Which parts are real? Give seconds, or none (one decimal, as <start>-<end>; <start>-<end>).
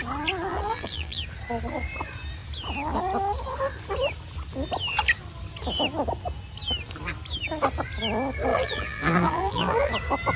0.0-0.5; 1.2-8.5; 9.9-10.4